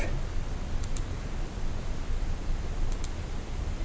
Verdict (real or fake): real